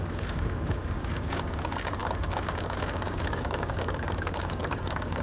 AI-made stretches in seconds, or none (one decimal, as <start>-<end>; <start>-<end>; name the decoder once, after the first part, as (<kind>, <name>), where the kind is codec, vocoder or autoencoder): 0.0-5.2 (codec, DAC)